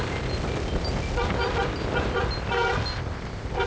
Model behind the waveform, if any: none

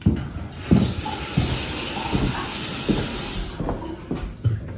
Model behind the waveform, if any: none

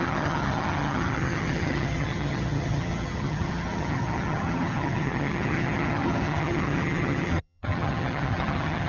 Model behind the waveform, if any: vocoder, HiFi-GAN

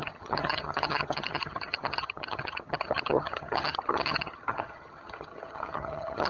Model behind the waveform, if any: vocoder, HiFi-GAN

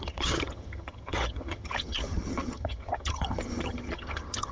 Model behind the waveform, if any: vocoder, HiFi-GAN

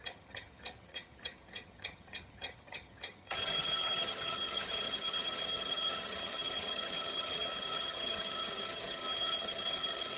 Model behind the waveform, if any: vocoder, HiFi-GAN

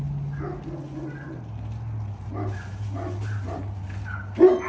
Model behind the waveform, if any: none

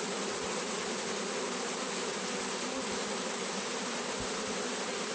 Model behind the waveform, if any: none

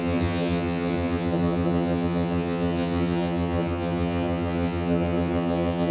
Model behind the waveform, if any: vocoder, HiFi-GAN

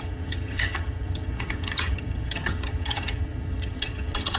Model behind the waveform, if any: vocoder, HiFi-GAN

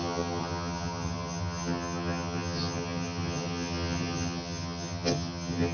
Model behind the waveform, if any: vocoder, HiFi-GAN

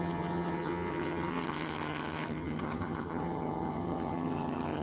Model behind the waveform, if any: vocoder, HiFi-GAN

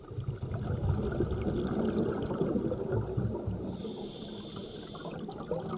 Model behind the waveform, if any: none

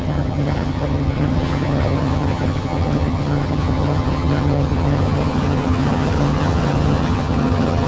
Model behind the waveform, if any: vocoder, HiFi-GAN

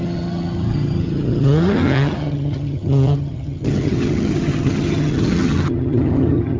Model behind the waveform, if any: vocoder, HiFi-GAN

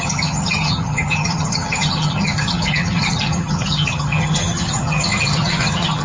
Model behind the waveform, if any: vocoder, HiFi-GAN